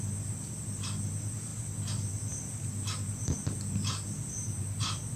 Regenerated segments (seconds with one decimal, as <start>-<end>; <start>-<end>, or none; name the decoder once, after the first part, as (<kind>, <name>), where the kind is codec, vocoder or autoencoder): none